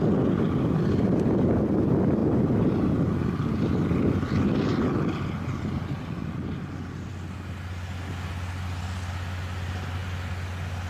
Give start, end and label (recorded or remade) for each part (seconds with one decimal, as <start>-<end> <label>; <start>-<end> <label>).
0.0-10.9 recorded

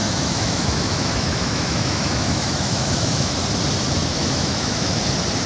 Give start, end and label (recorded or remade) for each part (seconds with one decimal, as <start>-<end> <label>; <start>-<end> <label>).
0.0-3.3 remade; 3.3-4.0 recorded; 4.0-5.0 remade; 5.0-5.5 recorded

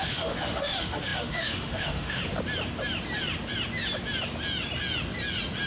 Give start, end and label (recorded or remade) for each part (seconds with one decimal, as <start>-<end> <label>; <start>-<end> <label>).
0.0-2.2 remade; 2.2-5.7 recorded

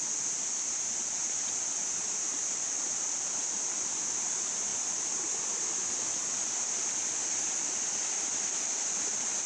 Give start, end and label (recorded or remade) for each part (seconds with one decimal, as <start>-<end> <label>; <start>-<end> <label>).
0.0-9.5 recorded